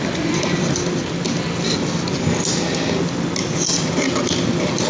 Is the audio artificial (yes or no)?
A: no